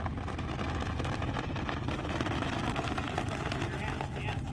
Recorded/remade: recorded